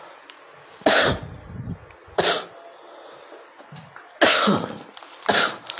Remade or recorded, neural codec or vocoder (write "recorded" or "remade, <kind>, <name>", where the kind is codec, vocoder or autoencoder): recorded